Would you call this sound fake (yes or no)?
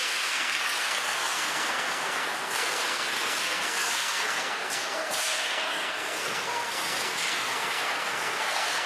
yes